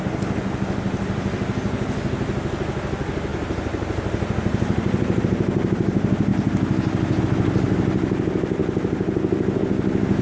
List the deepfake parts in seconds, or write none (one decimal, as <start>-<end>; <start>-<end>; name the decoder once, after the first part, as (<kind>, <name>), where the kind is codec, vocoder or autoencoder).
none

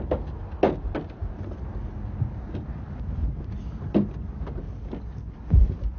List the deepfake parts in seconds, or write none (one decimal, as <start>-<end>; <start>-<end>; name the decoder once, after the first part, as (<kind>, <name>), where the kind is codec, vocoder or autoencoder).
none

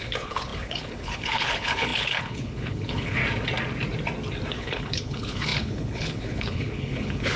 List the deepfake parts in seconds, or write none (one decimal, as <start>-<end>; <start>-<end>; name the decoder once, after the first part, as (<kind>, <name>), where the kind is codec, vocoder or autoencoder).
0.0-3.2 (codec, HILCodec); 4.5-7.4

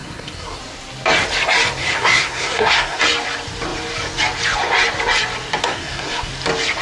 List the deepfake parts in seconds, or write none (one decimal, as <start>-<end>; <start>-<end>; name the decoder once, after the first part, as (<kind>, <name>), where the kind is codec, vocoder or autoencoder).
0.0-0.6 (codec, SNAC); 1.8-3.0; 5.6-6.3